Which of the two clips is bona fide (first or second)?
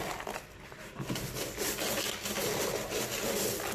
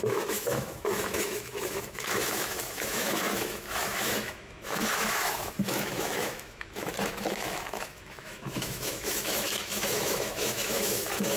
first